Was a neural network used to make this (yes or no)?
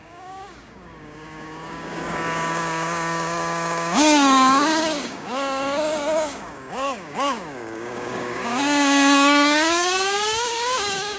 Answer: yes